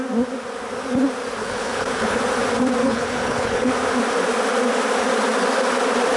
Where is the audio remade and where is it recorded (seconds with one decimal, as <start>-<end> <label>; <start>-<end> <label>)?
0.0-1.4 recorded; 1.4-2.2 remade; 2.2-2.8 recorded; 2.8-3.7 remade; 3.7-6.2 recorded